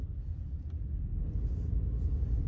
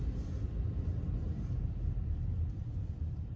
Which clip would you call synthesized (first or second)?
second